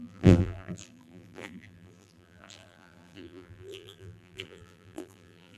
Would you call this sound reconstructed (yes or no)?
yes